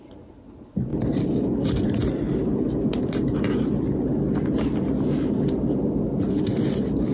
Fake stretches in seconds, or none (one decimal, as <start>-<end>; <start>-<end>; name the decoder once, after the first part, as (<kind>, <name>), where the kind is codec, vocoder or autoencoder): none